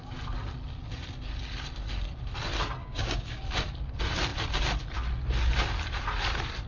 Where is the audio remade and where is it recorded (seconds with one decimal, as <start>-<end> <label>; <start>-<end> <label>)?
0.0-2.8 recorded; 2.8-3.4 remade; 3.4-6.7 recorded